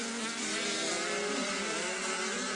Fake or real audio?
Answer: real